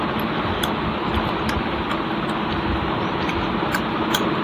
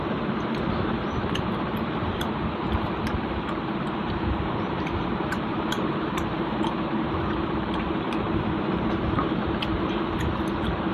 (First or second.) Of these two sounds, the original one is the first